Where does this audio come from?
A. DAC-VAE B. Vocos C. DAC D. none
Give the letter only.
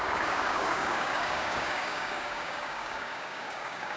C